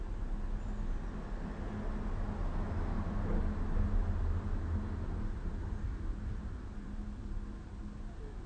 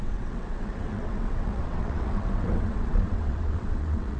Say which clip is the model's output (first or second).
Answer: second